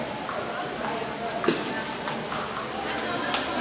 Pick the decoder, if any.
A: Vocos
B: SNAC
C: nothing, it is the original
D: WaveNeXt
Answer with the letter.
C